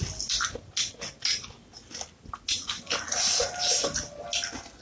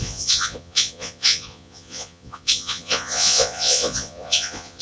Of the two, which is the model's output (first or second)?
second